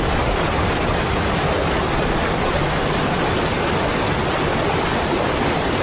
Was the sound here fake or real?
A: real